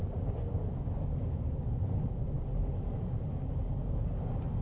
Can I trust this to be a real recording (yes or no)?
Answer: yes